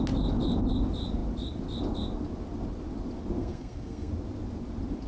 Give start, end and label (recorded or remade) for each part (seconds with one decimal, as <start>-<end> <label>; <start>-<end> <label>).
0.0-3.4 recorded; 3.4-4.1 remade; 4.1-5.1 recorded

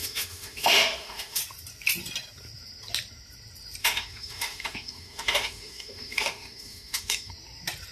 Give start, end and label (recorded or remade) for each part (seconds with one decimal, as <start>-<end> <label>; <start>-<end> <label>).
0.0-1.4 remade; 1.4-3.8 recorded; 3.8-7.3 remade; 7.3-7.9 recorded

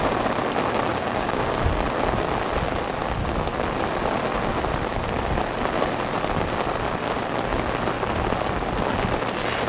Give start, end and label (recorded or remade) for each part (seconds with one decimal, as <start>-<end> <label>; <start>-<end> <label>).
0.0-0.9 recorded; 0.9-1.5 remade; 1.5-9.7 recorded

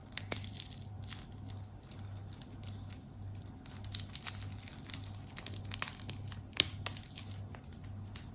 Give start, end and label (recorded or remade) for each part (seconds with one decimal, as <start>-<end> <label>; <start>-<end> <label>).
0.0-8.3 recorded

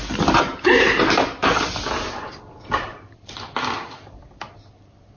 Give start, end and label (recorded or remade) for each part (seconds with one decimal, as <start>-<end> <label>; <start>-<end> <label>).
0.0-1.4 recorded; 1.4-4.3 remade; 4.3-5.2 recorded

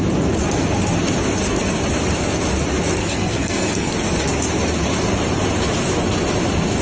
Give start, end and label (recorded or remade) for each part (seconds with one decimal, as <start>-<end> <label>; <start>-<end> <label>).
0.0-3.0 recorded; 3.0-3.9 remade; 3.9-6.8 recorded

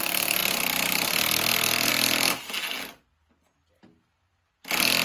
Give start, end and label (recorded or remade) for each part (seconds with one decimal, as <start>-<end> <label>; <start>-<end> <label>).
0.0-0.4 recorded; 0.4-1.9 remade; 1.9-5.0 recorded